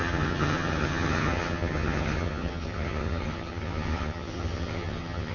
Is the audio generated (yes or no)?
yes